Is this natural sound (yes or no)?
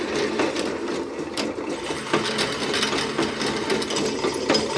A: yes